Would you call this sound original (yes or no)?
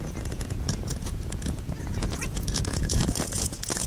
no